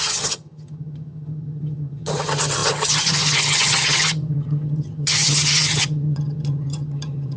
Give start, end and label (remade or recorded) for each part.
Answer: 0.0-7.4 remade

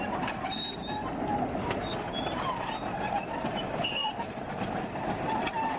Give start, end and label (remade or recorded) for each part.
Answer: 0.0-5.8 recorded

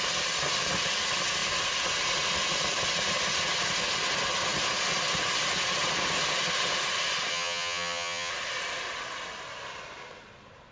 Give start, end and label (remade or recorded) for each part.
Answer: 0.0-7.3 recorded; 7.3-8.3 remade; 8.3-10.7 recorded

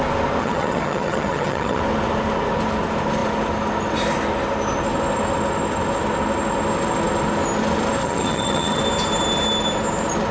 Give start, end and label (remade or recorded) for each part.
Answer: 0.0-0.4 recorded; 0.4-1.8 remade; 1.8-8.0 recorded; 8.0-8.8 remade; 8.8-10.3 recorded

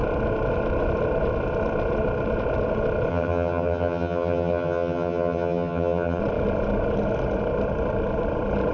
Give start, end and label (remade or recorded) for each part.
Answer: 0.0-3.1 recorded; 3.1-6.2 remade; 6.2-8.7 recorded

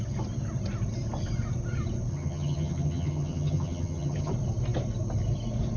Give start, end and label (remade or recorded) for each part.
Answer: 0.0-2.1 recorded; 2.1-4.3 remade; 4.3-5.8 recorded

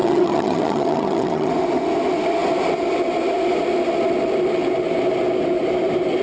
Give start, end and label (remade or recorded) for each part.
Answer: 0.0-1.5 remade; 1.5-6.2 recorded

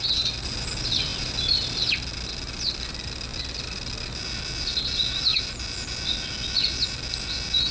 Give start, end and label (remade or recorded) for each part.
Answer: 0.0-7.7 recorded